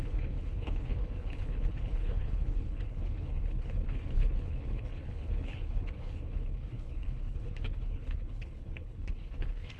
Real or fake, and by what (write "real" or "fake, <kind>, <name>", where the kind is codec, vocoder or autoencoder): fake, codec, HILCodec